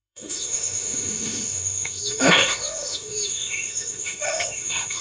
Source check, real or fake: fake